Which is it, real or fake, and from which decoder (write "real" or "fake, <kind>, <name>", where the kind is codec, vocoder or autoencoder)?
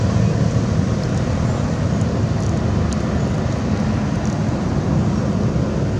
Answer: real